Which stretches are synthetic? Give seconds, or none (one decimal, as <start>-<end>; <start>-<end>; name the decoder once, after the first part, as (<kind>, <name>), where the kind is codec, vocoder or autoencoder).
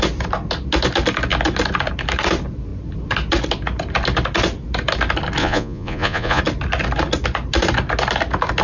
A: 5.4-6.4 (vocoder, Vocos)